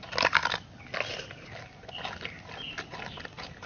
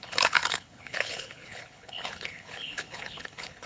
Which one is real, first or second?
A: first